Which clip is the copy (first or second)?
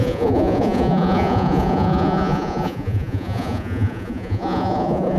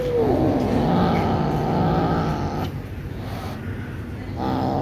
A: first